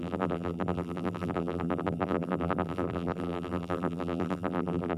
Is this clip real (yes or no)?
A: no